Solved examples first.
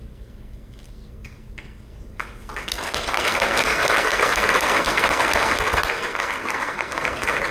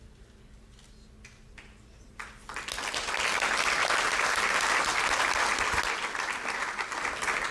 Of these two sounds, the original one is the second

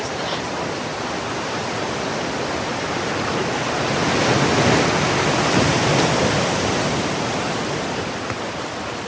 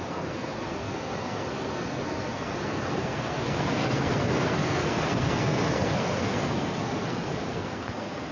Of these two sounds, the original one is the first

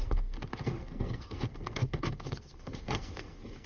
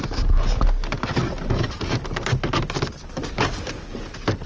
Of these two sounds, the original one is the second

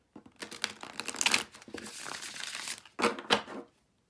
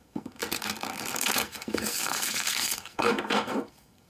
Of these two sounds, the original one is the first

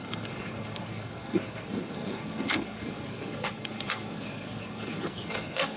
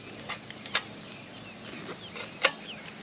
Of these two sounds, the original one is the second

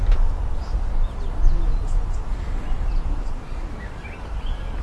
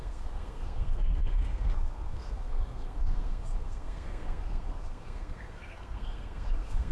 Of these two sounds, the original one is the first